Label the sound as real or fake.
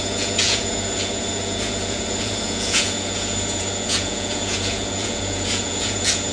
fake